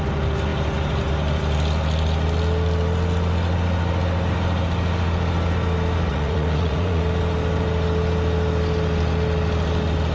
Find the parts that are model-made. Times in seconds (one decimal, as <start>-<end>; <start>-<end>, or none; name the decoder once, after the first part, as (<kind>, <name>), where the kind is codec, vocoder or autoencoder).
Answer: 6.1-7.0 (vocoder, Vocos)